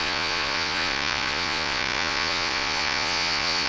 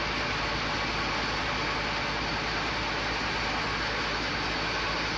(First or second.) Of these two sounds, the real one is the second